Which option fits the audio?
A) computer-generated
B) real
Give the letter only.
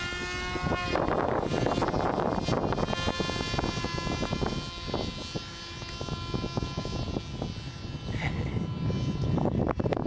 B